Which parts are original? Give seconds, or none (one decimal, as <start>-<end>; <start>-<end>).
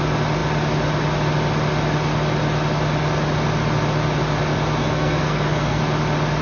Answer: 0.0-4.8; 5.8-6.4